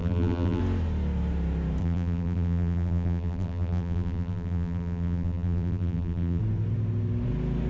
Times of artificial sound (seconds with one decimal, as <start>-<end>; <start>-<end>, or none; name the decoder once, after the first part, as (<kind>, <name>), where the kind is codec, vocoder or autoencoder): 0.0-0.6 (vocoder, BigVGAN v2); 1.8-6.4